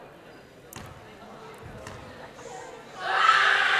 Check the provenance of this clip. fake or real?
real